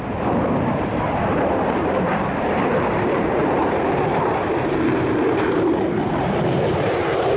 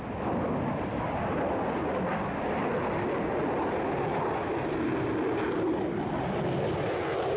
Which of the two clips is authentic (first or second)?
second